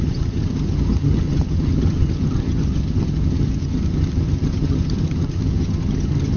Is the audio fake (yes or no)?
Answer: yes